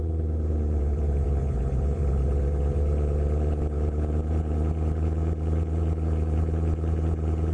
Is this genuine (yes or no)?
no